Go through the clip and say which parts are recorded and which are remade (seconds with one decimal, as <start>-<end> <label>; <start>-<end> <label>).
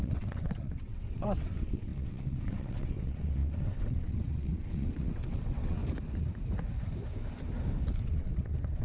0.0-5.8 remade; 5.8-8.0 recorded; 8.0-8.8 remade